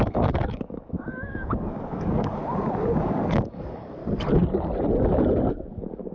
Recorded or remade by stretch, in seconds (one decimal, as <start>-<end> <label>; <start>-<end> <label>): 0.0-2.4 remade; 2.4-3.0 recorded; 3.0-4.0 remade; 4.0-5.5 recorded; 5.5-6.1 remade